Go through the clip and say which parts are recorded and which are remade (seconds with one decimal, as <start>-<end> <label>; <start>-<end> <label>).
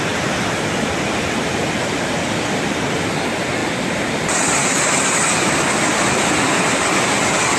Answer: 0.0-7.6 recorded